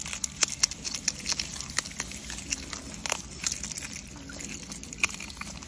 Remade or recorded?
recorded